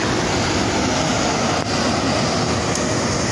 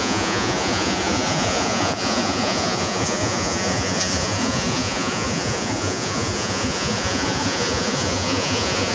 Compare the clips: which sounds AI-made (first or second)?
second